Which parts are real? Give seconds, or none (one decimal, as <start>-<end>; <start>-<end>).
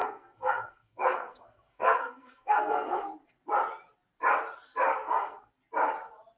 3.0-4.9; 5.5-6.4